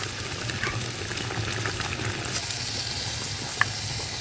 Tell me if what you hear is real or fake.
real